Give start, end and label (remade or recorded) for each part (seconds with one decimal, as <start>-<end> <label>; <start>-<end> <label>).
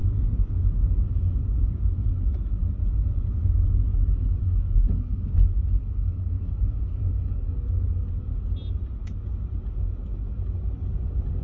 0.0-3.9 recorded; 3.9-8.1 remade; 8.1-11.4 recorded